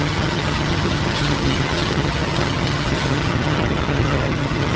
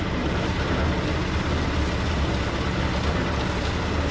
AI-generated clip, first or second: first